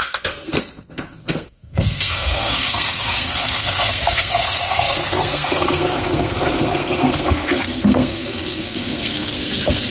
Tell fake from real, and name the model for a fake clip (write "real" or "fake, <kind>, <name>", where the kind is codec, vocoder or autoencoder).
fake, codec, SNAC